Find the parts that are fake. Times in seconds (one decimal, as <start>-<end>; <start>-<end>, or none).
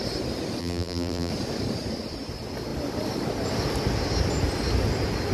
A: 0.6-1.3